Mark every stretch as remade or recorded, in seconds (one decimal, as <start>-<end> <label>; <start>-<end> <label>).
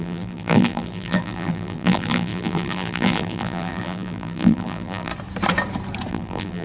0.0-5.1 remade; 5.1-6.1 recorded; 6.1-6.6 remade